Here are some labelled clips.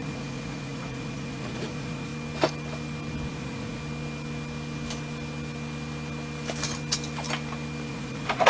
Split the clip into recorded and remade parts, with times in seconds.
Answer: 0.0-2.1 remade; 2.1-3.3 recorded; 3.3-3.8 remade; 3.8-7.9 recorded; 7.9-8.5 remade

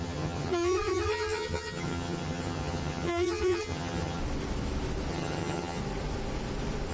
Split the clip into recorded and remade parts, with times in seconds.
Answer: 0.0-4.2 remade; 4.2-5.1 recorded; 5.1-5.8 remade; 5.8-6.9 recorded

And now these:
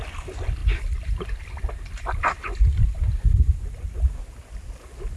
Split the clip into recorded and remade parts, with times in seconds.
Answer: 0.0-0.6 recorded; 0.6-3.6 remade; 3.6-5.2 recorded

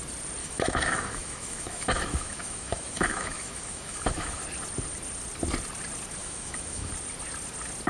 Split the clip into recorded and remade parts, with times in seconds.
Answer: 0.0-0.4 recorded; 0.4-4.4 remade; 4.4-6.2 recorded; 6.2-6.9 remade; 6.9-7.9 recorded

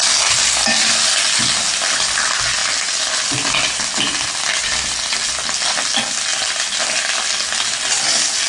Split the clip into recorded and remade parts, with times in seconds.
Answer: 0.0-8.5 recorded

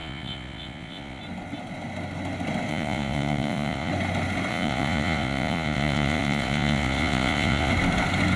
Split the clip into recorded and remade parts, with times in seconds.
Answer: 0.0-1.2 remade; 1.2-2.7 recorded; 2.7-3.9 remade; 3.9-4.5 recorded; 4.5-7.7 remade; 7.7-8.4 recorded

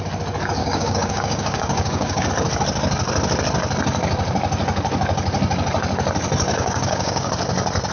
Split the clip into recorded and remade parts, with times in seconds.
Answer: 0.0-0.6 recorded; 0.6-2.3 remade; 2.3-6.5 recorded; 6.5-7.3 remade; 7.3-7.9 recorded

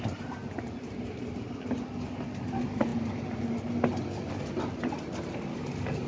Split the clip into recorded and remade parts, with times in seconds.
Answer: 0.0-5.5 recorded; 5.5-6.1 remade